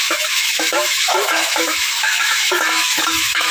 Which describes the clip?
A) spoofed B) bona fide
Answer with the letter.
A